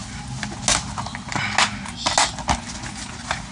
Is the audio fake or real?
real